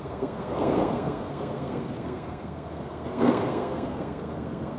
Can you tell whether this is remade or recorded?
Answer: remade